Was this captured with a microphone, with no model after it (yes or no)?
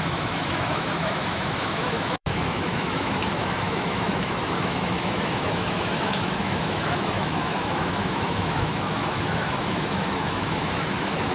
no